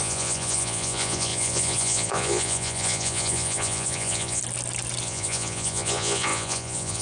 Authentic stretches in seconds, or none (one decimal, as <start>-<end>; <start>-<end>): 4.4-5.0